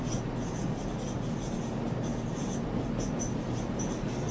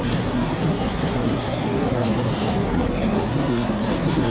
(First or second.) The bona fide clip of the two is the first